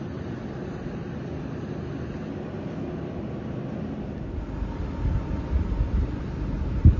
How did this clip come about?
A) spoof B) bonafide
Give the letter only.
B